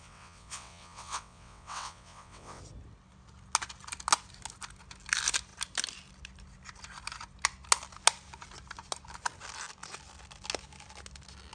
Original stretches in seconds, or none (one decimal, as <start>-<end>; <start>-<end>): 2.6-11.5